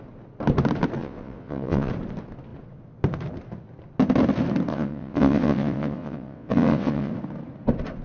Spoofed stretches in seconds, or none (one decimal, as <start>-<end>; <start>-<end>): 1.0-1.9; 4.7-7.1